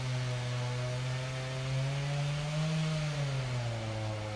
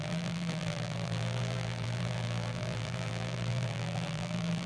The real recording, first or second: first